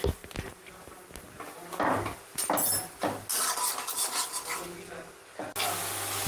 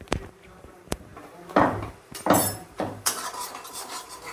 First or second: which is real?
first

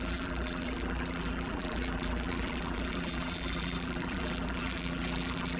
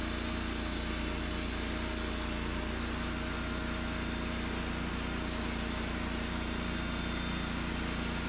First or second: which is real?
second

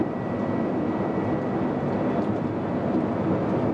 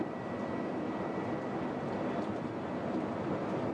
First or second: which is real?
first